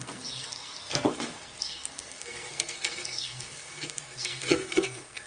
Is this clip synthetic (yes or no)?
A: yes